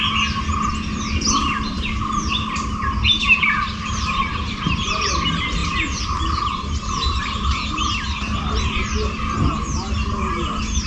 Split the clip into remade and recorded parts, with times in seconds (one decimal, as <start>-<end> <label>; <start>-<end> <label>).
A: 0.0-10.9 recorded